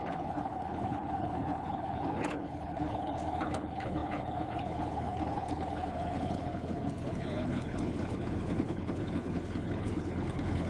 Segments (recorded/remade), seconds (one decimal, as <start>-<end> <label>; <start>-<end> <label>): 0.0-10.7 remade